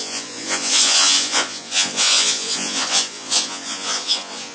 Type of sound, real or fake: fake